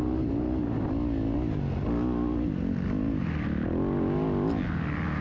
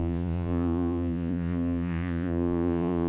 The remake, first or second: second